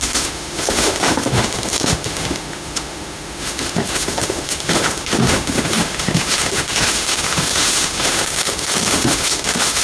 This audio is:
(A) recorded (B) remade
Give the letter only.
B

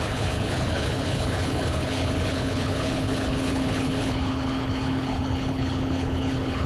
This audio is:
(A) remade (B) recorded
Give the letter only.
A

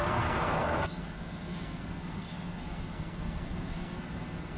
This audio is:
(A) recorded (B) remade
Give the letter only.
B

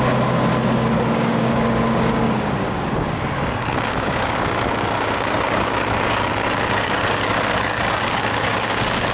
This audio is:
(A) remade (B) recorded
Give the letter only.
A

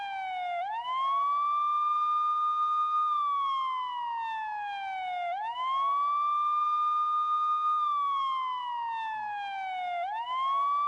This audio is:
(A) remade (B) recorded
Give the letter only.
B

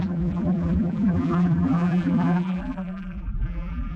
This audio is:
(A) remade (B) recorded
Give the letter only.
A